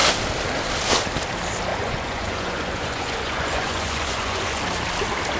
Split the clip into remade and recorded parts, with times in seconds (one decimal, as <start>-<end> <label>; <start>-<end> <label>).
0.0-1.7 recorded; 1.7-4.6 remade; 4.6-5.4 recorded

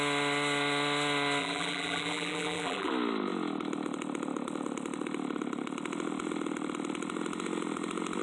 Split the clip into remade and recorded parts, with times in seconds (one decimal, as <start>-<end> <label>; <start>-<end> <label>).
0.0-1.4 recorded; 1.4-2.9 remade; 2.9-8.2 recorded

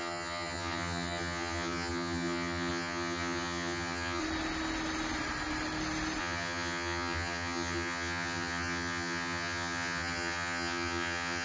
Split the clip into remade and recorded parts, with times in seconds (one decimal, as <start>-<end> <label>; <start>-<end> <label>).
0.0-4.2 remade; 4.2-6.2 recorded; 6.2-11.4 remade

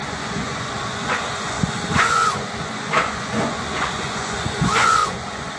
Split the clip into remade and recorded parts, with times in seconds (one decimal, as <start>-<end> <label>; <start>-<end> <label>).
0.0-5.6 remade

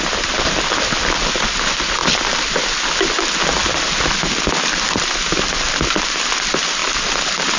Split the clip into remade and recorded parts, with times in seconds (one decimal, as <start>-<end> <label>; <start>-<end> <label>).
0.0-7.6 recorded

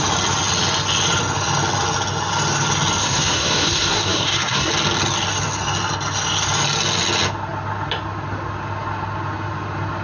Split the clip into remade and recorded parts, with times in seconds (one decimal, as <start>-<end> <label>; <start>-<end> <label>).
0.0-3.0 recorded; 3.0-4.7 remade; 4.7-10.0 recorded

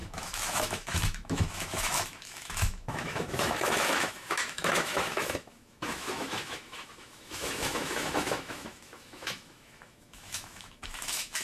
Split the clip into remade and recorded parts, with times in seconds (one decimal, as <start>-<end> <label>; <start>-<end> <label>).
0.0-11.4 remade

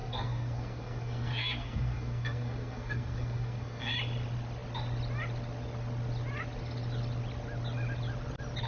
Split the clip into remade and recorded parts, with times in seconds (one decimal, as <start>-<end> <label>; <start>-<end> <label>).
0.0-3.9 remade; 3.9-8.7 recorded